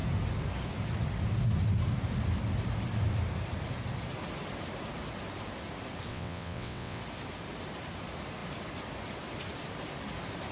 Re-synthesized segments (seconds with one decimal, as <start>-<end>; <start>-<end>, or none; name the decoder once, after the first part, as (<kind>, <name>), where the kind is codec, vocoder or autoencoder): 6.1-7.0 (vocoder, WaveNeXt)